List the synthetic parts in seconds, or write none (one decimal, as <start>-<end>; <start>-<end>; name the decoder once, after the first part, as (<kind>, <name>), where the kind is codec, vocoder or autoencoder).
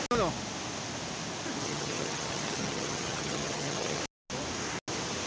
1.6-4.0 (vocoder, HiFi-GAN)